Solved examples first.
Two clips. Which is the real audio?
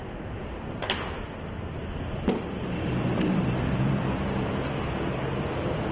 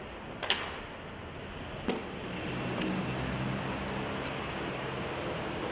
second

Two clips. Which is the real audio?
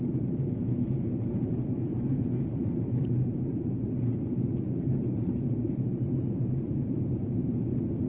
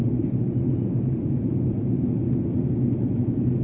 second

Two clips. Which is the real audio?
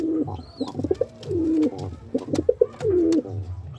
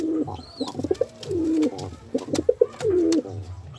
first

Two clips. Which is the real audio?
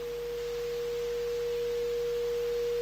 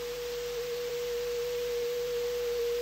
first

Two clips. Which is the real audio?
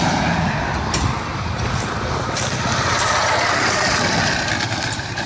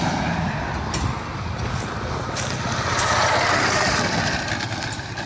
second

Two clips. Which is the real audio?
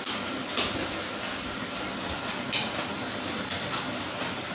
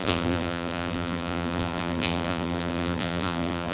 first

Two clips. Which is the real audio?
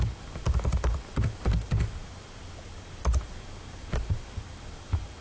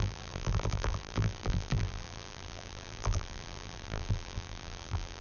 first